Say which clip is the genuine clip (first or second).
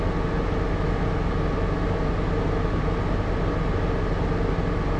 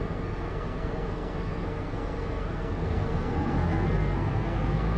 first